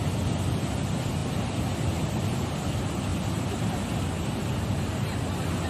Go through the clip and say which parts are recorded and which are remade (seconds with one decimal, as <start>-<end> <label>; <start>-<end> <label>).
0.0-5.7 recorded

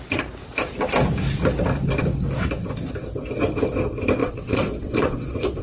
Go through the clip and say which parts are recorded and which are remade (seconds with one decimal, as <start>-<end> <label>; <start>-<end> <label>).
0.0-4.2 recorded; 4.2-5.6 remade

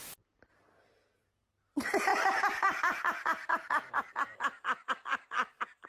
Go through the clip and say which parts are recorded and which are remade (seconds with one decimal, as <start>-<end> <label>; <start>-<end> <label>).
0.0-5.9 recorded